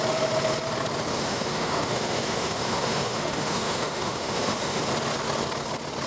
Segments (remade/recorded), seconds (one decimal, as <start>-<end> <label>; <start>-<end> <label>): 0.0-1.1 recorded; 1.1-4.8 remade; 4.8-6.1 recorded